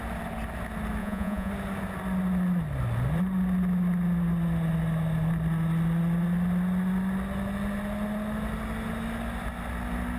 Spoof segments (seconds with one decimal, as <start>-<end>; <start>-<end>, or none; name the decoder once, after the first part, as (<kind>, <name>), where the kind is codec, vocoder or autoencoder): 1.0-1.5 (vocoder, Vocos)